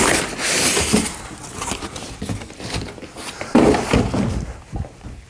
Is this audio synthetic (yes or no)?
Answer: no